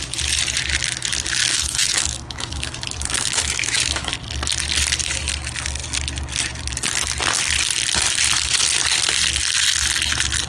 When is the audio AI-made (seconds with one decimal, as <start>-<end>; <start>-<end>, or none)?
1.4-4.1